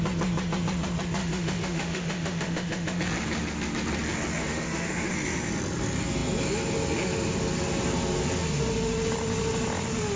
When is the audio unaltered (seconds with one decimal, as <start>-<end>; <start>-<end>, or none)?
0.0-1.2; 3.0-4.4; 5.1-10.2